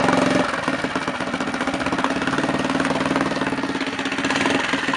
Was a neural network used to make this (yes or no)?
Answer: no